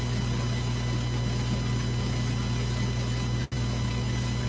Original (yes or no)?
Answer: yes